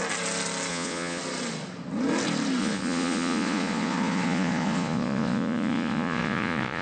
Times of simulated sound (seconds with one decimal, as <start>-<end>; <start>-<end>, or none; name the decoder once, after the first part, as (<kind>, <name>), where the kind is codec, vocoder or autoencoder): 0.7-1.2 (vocoder, Vocos); 2.6-6.8